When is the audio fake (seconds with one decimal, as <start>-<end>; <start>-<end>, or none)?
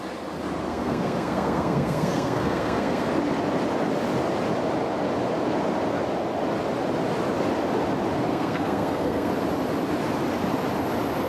0.7-3.1; 8.3-9.3